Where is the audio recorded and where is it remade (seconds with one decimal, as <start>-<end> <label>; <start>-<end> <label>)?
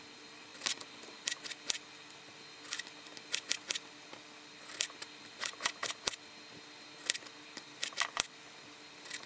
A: 0.0-9.3 recorded